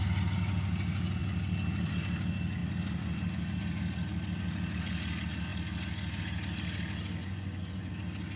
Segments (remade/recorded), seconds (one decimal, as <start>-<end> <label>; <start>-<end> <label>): 0.0-7.2 recorded; 7.2-7.9 remade; 7.9-8.4 recorded